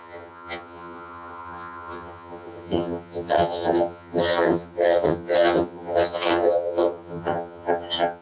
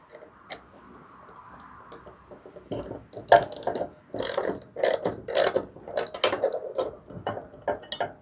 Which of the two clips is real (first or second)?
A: second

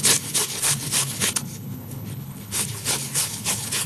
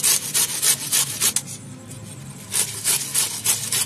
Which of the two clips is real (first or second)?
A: second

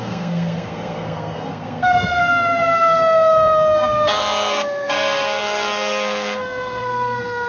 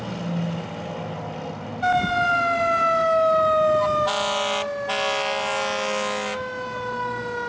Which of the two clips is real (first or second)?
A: second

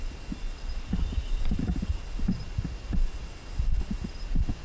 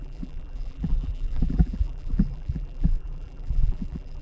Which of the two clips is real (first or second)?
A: first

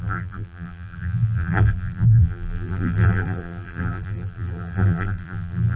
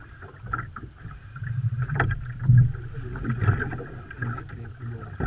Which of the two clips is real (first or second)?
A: second